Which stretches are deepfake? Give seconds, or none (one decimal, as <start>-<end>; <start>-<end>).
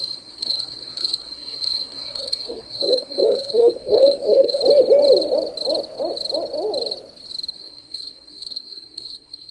0.0-4.6; 7.5-9.5